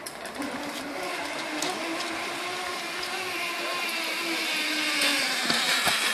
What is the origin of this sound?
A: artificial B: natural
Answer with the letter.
B